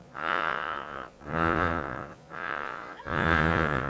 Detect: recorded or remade remade